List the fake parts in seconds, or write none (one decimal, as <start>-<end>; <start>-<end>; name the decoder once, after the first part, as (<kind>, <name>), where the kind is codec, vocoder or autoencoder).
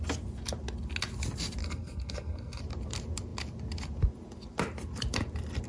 1.6-2.6 (codec, SNAC)